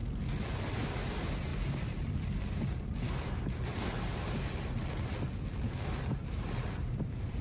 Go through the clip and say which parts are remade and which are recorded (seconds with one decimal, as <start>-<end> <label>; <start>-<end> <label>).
0.0-1.5 recorded; 1.5-3.3 remade; 3.3-6.2 recorded; 6.2-7.4 remade